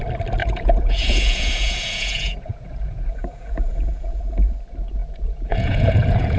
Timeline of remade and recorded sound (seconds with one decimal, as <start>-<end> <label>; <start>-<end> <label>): 0.0-0.4 recorded; 0.4-4.2 remade; 4.2-5.0 recorded; 5.0-6.4 remade